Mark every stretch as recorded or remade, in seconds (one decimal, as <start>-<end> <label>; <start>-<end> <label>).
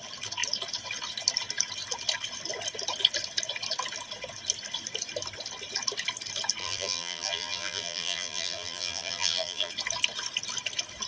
0.0-6.6 recorded; 6.6-9.7 remade; 9.7-11.1 recorded